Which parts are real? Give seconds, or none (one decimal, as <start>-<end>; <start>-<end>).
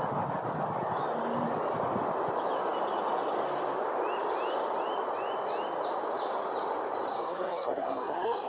0.0-7.1